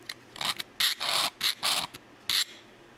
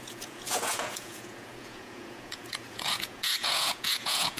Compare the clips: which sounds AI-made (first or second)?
second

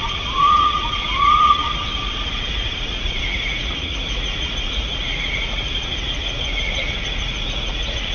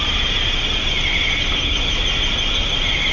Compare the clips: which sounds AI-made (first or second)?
first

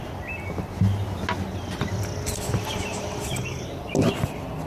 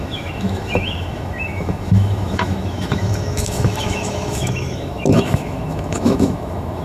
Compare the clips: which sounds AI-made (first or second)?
second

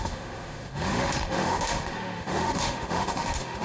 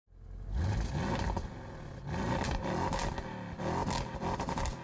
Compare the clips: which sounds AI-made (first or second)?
first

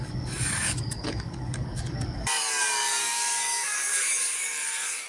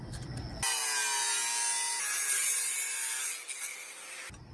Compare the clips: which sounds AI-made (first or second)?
first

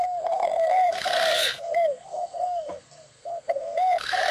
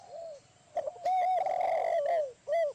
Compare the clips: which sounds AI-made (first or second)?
first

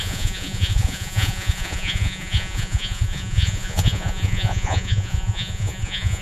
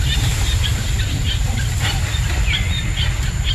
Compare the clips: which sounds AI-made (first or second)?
first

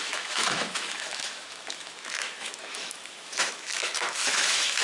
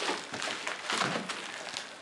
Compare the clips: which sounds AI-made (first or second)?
first